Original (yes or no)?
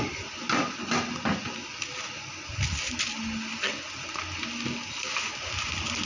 yes